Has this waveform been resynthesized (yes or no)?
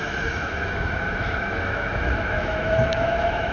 yes